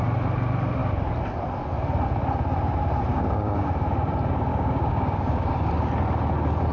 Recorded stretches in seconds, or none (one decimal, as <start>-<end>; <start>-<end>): 0.0-3.1; 3.7-4.5; 5.7-6.7